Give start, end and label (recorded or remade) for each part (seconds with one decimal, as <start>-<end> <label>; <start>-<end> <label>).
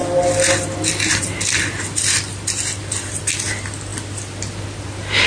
0.0-3.9 remade; 3.9-5.3 recorded